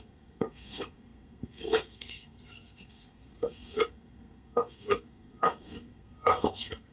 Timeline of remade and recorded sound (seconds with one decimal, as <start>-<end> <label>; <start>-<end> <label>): 0.0-6.9 remade